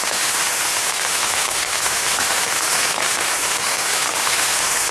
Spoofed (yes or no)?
yes